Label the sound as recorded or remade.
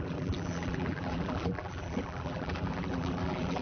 remade